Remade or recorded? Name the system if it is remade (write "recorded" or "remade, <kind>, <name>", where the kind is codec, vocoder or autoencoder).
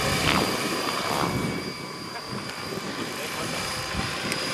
remade, vocoder, BigVGAN v2